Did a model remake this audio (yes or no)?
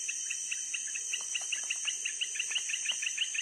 no